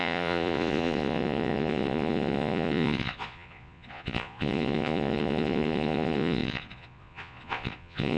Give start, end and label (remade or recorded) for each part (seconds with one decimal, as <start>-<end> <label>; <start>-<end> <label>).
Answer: 0.0-8.2 remade